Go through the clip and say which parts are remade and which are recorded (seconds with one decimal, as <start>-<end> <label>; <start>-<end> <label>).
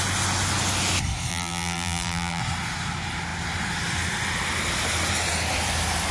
0.0-1.3 recorded; 1.3-2.4 remade; 2.4-6.1 recorded